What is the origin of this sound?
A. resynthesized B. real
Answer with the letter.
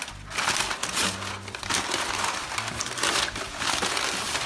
B